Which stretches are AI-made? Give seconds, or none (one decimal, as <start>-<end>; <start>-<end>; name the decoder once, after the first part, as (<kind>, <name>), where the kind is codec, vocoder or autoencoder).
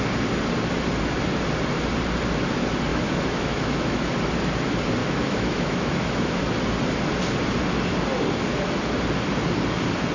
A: 2.9-4.1 (autoencoder, DAC-VAE); 5.0-6.4